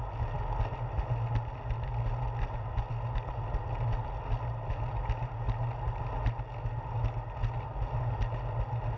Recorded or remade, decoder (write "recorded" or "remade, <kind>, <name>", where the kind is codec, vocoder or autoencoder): recorded